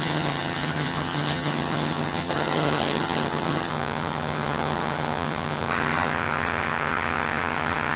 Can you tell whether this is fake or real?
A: fake